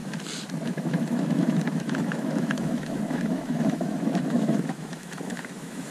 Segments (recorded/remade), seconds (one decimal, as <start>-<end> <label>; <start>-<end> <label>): 0.0-0.7 recorded; 0.7-5.9 remade